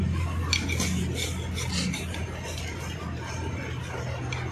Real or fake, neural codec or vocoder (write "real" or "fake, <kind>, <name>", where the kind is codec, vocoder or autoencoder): real